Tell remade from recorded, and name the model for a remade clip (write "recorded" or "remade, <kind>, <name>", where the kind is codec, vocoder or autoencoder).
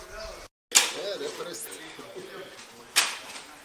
recorded